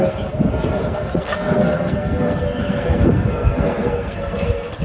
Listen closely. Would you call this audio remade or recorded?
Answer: remade